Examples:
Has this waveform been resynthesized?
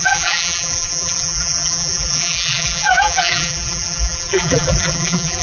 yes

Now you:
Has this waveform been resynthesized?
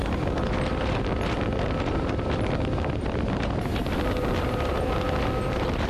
no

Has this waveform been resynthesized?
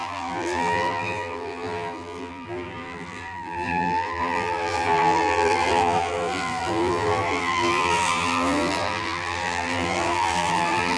yes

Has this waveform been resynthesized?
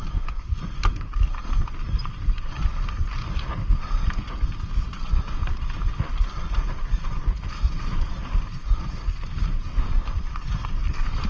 no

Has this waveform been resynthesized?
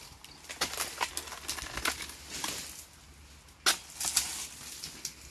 no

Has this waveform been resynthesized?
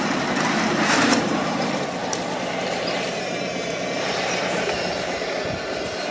yes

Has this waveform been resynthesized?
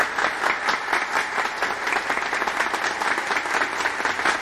yes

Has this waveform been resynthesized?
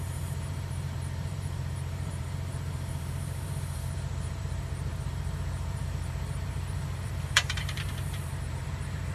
yes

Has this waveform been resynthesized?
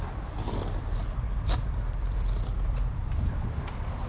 yes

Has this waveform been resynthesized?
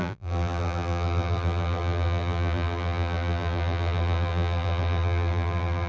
yes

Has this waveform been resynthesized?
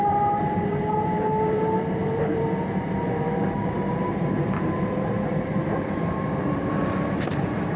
yes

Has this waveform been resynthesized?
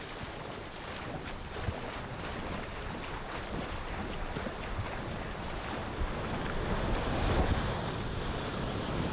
no